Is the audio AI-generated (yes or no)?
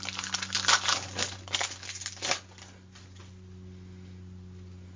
no